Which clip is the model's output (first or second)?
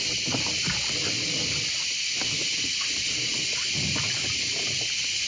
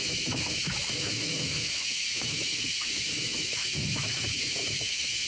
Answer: second